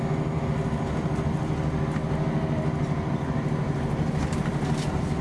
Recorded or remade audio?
recorded